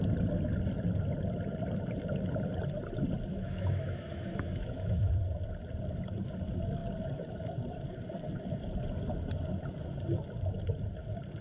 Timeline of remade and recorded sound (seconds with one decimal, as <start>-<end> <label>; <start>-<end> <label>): 0.0-3.3 recorded; 3.3-5.1 remade; 5.1-11.4 recorded